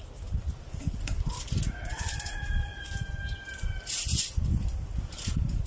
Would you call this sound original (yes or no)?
yes